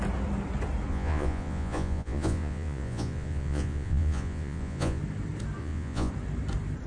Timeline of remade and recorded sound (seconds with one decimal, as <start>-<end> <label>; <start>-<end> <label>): 0.0-0.9 recorded; 0.9-5.0 remade; 5.0-5.6 recorded; 5.6-6.1 remade; 6.1-6.9 recorded